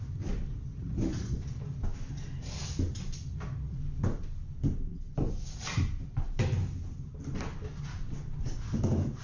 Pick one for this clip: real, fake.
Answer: real